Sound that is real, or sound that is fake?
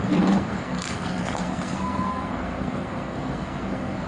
fake